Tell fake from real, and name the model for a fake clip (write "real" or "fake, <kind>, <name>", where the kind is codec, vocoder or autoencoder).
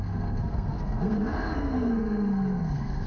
fake, codec, SNAC